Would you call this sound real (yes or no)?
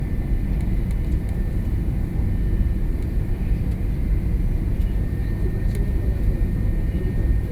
yes